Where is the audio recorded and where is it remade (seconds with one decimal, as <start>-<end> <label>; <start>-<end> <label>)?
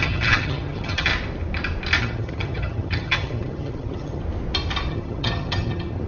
0.0-1.1 remade; 1.1-2.0 recorded; 2.0-4.2 remade; 4.2-4.9 recorded; 4.9-6.1 remade